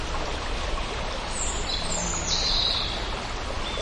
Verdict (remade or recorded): recorded